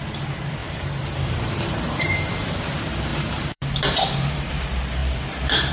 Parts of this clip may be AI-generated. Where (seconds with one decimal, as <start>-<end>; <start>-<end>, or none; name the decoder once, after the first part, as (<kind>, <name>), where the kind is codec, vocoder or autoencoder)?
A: 0.6-2.6 (vocoder, BigVGAN v2); 3.1-4.5; 5.0-5.7